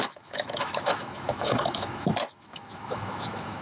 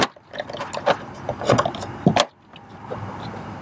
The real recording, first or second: second